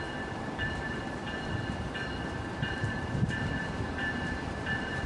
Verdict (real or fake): fake